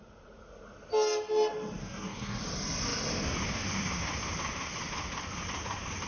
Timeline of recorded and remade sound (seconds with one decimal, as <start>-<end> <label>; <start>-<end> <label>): 0.0-1.8 recorded; 1.8-2.4 remade; 2.4-6.1 recorded